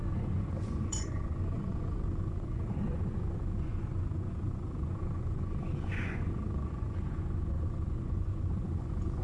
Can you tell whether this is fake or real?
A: fake